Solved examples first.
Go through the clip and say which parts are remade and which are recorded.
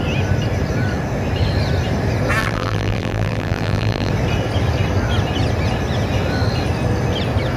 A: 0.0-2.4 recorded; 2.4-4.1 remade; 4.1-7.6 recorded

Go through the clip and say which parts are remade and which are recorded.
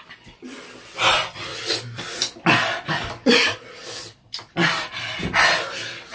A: 0.0-1.5 recorded; 1.5-5.0 remade; 5.0-6.1 recorded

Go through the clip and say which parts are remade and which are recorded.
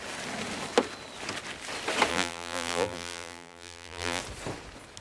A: 0.0-2.1 recorded; 2.1-4.2 remade; 4.2-5.0 recorded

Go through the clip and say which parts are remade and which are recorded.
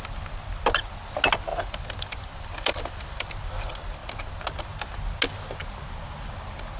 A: 0.0-1.5 recorded; 1.5-3.3 remade; 3.3-6.8 recorded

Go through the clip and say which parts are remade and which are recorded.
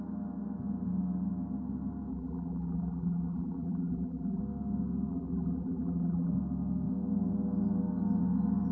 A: 0.0-2.1 recorded; 2.1-4.4 remade; 4.4-5.1 recorded; 5.1-6.3 remade; 6.3-8.7 recorded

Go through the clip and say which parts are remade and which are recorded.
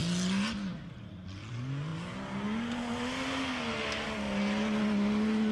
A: 0.0-0.9 recorded; 0.9-1.9 remade; 1.9-5.5 recorded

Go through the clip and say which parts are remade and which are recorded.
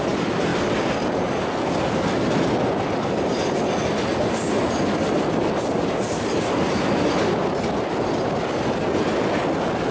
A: 0.0-0.5 recorded; 0.5-1.7 remade; 1.7-9.9 recorded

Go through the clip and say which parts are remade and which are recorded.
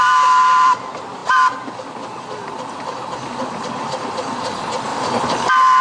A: 0.0-1.2 remade; 1.2-3.6 recorded; 3.6-4.9 remade; 4.9-5.8 recorded